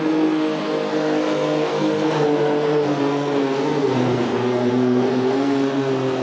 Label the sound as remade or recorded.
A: remade